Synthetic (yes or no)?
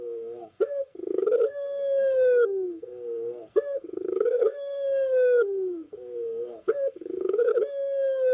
yes